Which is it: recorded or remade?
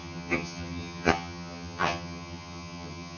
remade